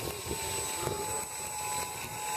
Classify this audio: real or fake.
real